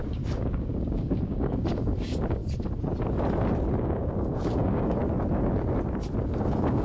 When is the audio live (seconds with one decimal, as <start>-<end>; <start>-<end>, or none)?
2.4-3.8; 5.0-6.2